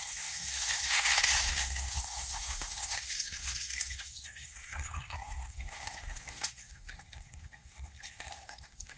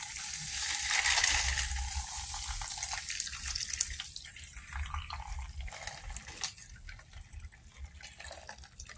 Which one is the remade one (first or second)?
first